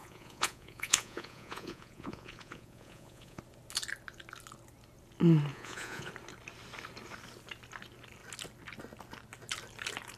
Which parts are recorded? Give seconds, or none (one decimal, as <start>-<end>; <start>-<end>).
3.4-5.5; 6.1-10.2